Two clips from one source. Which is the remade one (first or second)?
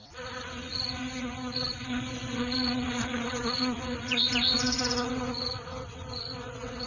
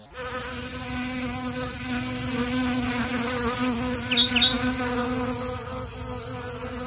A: first